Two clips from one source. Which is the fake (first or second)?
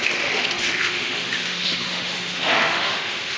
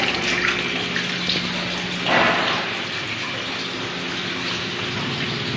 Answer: first